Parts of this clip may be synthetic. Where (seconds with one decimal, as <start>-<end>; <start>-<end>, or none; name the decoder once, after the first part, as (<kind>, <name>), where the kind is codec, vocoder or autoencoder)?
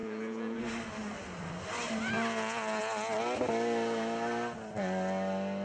0.0-0.6 (vocoder, Vocos)